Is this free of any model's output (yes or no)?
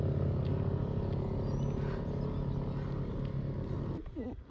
yes